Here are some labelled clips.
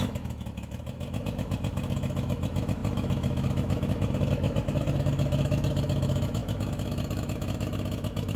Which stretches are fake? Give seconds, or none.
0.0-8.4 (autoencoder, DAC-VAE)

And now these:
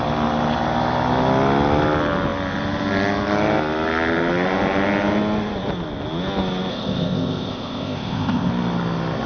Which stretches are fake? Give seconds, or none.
6.7-8.5 (codec, ZipCodec)